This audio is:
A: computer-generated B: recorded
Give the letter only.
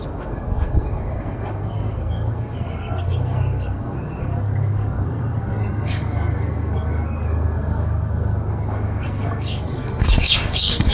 A